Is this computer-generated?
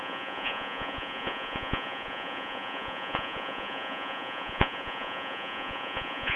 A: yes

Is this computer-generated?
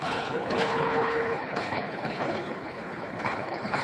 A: yes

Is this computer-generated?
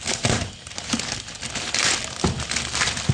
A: no